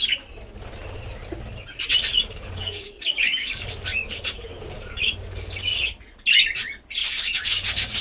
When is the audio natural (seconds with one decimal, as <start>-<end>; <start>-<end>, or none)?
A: 0.0-2.1; 5.8-7.0